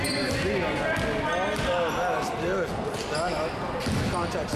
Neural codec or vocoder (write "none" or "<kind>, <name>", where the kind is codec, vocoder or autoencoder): none